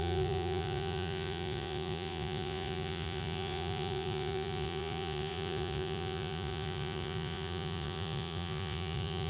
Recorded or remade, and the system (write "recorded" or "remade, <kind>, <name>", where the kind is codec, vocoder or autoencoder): remade, vocoder, Vocos